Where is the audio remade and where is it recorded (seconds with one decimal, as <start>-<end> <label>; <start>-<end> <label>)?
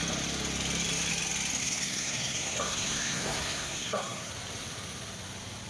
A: 0.0-1.6 recorded; 1.6-4.3 remade; 4.3-5.7 recorded